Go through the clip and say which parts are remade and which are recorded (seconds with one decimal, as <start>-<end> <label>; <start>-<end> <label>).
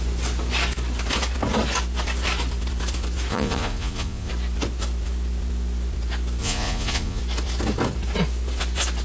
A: 0.0-3.3 recorded; 3.3-4.3 remade; 4.3-6.4 recorded; 6.4-7.2 remade; 7.2-9.0 recorded